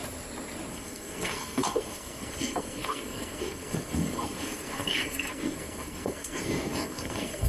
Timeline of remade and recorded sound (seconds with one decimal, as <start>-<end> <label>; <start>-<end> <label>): 0.0-0.7 recorded; 0.7-7.5 remade